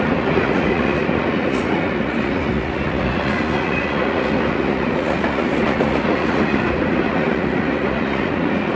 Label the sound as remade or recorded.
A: remade